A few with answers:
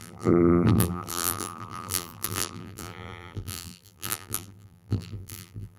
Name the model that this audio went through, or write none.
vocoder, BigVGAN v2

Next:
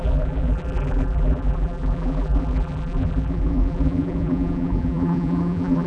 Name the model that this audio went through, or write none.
vocoder, BigVGAN v2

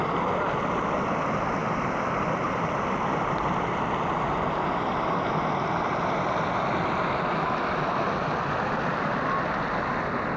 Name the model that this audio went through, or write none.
none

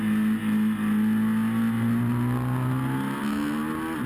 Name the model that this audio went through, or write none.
none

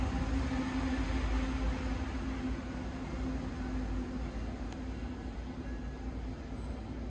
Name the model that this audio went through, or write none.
none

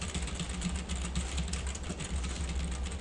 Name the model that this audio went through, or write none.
none